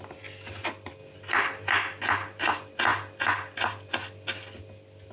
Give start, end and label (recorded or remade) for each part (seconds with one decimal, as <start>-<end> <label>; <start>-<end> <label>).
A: 0.0-5.1 recorded